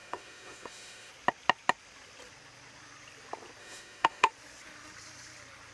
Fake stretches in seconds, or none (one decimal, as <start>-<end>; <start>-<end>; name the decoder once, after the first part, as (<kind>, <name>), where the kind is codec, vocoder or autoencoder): 0.0-1.1 (autoencoder, DAC-VAE); 3.6-4.3